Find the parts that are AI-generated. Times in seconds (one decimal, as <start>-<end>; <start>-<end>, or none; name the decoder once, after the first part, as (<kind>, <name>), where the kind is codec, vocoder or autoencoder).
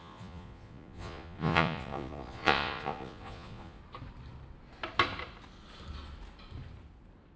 0.0-3.8 (vocoder, Vocos)